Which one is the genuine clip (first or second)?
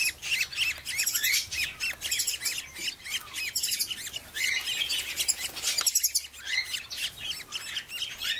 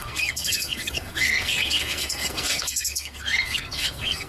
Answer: first